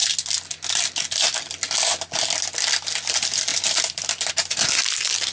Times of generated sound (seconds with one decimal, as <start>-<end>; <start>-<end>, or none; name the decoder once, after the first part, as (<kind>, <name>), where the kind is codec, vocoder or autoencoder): 3.5-4.3 (vocoder, BigVGAN v2)